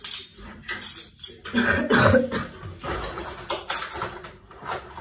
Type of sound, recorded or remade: recorded